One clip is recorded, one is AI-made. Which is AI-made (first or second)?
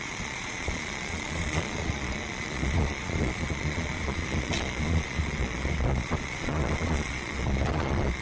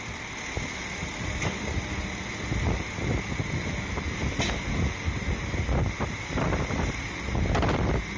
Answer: first